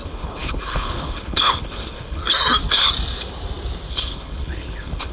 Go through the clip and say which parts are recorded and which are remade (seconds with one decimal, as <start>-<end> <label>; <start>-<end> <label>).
0.0-2.2 remade; 2.2-3.9 recorded; 3.9-5.1 remade